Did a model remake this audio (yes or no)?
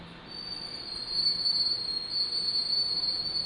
no